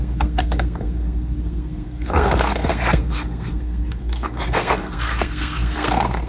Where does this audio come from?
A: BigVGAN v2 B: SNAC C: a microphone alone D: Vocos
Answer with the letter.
B